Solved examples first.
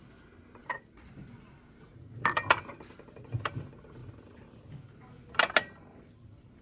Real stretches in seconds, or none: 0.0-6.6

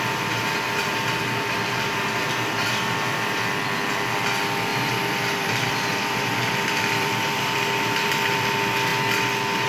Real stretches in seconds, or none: 0.0-4.7; 8.5-9.7

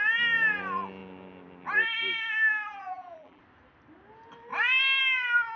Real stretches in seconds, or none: 0.0-2.7; 3.4-5.6